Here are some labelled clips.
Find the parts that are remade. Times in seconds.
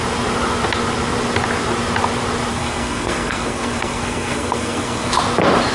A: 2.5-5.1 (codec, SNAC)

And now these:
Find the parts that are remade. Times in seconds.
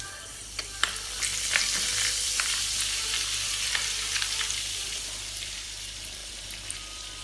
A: 0.0-7.2 (vocoder, BigVGAN v2)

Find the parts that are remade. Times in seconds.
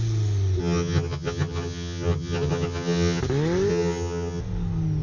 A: 0.6-3.2 (vocoder, HiFi-GAN); 3.7-4.4